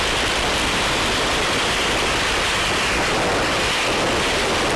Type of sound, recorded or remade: recorded